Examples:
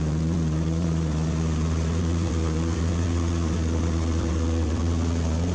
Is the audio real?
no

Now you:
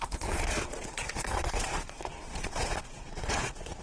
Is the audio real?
no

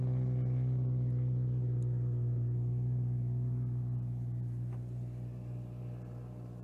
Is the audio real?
yes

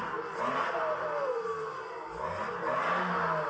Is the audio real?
yes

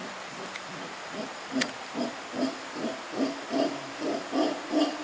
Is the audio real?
yes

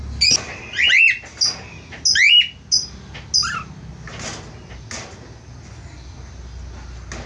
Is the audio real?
yes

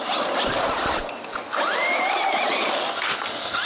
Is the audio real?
yes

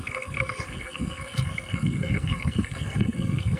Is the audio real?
no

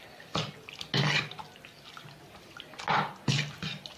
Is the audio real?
yes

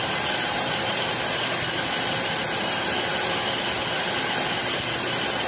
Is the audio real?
yes